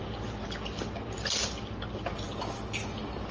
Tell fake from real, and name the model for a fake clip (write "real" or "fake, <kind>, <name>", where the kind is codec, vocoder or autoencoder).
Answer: real